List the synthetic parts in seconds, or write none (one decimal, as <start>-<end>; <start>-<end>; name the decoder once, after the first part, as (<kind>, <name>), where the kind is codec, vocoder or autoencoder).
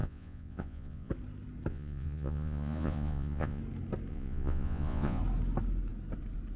0.0-1.1 (vocoder, Vocos); 1.7-3.6; 4.1-5.2